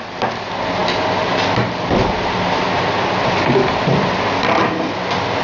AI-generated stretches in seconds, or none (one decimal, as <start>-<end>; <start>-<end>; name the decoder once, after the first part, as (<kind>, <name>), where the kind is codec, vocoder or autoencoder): none